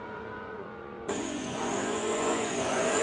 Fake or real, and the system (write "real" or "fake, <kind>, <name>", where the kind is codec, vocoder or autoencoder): fake, vocoder, Vocos